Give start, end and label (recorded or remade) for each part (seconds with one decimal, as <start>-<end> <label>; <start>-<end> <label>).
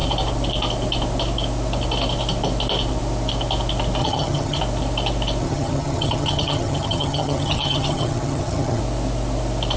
0.0-4.0 recorded; 4.0-4.6 remade; 4.6-5.4 recorded; 5.4-8.8 remade; 8.8-9.8 recorded